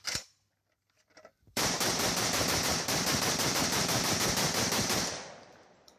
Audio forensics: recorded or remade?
remade